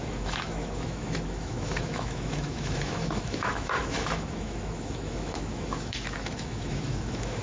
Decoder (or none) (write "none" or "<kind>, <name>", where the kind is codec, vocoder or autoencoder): autoencoder, DAC-VAE